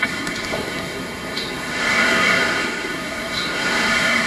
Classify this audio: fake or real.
fake